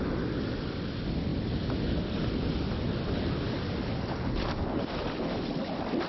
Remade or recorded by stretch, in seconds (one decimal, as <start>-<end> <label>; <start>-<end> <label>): 0.0-6.1 recorded